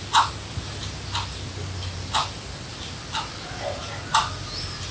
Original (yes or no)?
yes